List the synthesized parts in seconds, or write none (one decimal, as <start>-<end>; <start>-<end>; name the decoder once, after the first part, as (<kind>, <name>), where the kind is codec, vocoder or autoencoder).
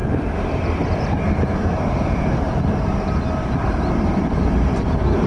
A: 2.4-5.3 (vocoder, BigVGAN v2)